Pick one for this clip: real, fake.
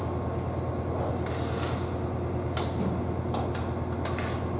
real